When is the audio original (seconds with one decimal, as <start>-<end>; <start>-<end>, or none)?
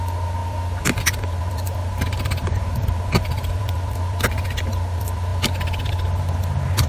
0.0-1.8; 3.7-6.9